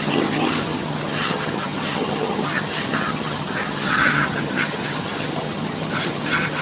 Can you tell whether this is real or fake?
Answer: fake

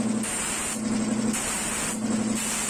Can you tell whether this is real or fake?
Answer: real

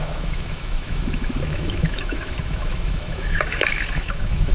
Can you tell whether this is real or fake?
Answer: fake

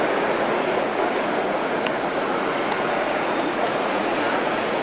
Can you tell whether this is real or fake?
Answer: fake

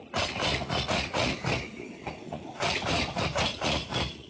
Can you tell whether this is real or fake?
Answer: fake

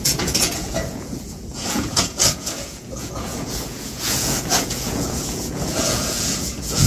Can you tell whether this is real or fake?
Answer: fake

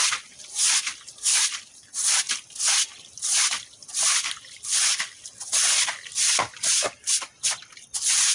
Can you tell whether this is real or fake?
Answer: real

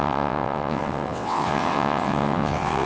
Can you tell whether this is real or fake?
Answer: fake